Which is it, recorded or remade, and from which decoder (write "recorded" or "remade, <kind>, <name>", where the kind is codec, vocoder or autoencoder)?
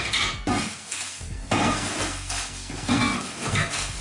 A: remade, codec, SNAC